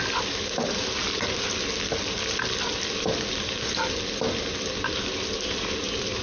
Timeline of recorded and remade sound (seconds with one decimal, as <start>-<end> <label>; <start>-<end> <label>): 0.0-6.2 recorded